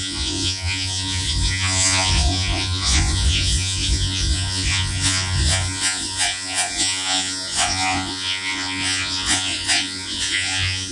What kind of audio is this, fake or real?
fake